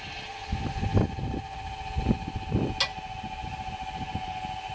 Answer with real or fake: real